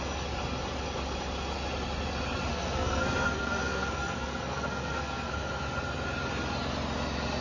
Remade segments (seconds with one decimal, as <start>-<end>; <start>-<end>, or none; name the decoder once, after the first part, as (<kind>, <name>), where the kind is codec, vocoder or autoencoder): 2.5-5.3 (codec, SNAC)